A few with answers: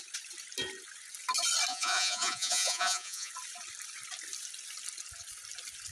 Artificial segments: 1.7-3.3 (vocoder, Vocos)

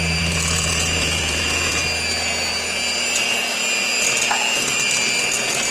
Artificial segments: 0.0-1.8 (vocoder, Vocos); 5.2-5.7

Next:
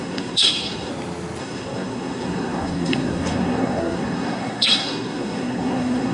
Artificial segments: 0.0-0.9 (codec, SNAC); 1.4-6.1